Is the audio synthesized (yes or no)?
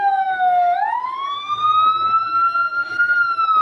no